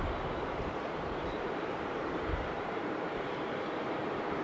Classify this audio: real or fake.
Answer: fake